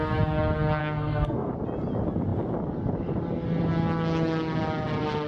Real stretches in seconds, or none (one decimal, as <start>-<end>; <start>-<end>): 0.0-0.8; 1.5-5.3